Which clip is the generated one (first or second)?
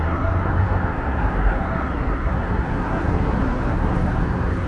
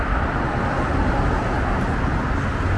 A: first